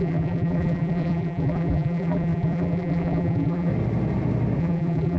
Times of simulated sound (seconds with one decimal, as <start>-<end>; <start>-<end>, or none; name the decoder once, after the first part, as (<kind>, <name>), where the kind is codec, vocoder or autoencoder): 0.0-3.7 (vocoder, BigVGAN v2); 4.6-5.2